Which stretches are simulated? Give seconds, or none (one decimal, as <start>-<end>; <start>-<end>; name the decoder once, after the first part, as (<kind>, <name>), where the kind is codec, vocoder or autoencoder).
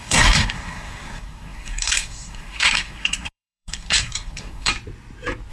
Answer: 0.0-4.7 (codec, SNAC)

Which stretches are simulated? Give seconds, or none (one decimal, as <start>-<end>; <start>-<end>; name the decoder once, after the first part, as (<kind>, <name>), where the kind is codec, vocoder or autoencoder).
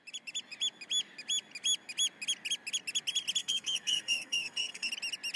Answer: 3.4-4.9 (codec, SNAC)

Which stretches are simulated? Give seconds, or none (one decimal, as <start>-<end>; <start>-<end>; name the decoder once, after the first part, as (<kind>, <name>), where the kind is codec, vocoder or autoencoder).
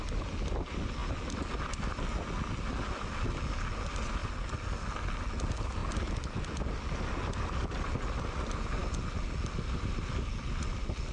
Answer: none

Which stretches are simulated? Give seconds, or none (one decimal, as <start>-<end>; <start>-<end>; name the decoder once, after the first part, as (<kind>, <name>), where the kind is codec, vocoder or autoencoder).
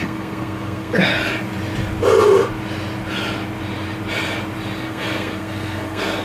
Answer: 0.0-1.1 (codec, SNAC); 4.8-6.2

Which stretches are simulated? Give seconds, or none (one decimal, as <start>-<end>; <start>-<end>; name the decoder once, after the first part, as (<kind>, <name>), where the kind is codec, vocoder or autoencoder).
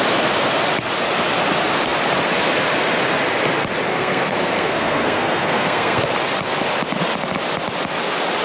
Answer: 3.9-6.0 (codec, SNAC)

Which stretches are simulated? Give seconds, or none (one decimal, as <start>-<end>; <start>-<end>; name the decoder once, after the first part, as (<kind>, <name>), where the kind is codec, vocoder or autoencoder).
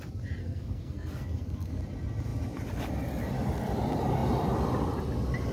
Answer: 0.4-1.8 (codec, SNAC)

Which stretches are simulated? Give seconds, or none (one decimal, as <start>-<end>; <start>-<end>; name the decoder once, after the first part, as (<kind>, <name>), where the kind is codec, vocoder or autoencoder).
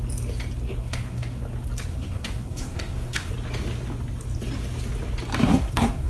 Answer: 0.8-1.4 (codec, SNAC); 1.9-3.3; 5.4-6.1